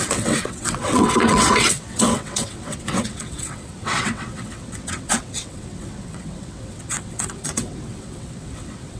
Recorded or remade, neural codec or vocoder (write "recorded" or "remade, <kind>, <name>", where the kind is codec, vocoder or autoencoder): remade, vocoder, WaveNeXt